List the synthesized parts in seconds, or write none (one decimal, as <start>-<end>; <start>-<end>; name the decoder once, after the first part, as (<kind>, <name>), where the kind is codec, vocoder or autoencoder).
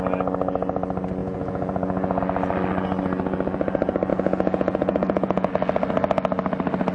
1.2-2.2 (vocoder, Vocos); 4.1-5.5